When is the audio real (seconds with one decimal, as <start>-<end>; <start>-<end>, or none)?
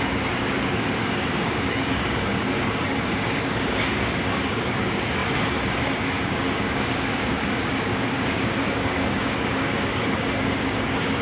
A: none